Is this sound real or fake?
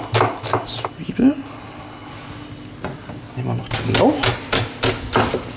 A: real